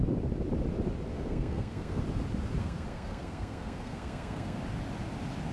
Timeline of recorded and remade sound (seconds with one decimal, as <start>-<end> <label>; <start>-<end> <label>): 0.0-1.1 recorded; 1.1-2.0 remade; 2.0-2.6 recorded; 2.6-4.6 remade; 4.6-5.5 recorded